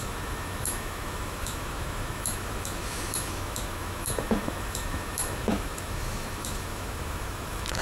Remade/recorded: remade